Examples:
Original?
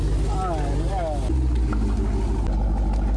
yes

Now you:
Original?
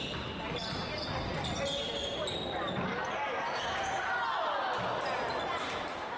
yes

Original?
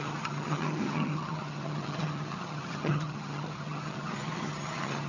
no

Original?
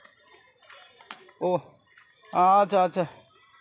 yes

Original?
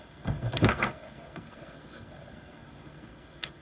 no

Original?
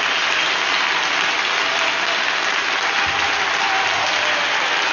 yes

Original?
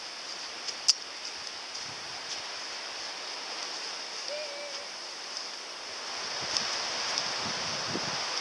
yes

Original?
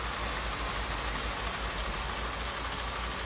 yes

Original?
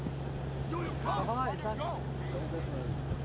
yes